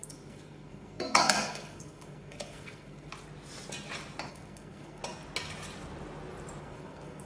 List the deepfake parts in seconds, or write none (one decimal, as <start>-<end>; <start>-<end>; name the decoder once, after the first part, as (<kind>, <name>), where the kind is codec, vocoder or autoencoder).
0.0-3.1 (codec, SNAC); 4.3-5.0; 6.6-7.3